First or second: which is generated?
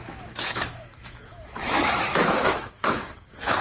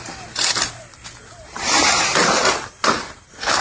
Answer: first